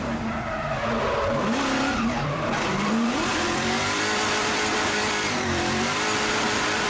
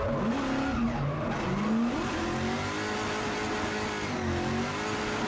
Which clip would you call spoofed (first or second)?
first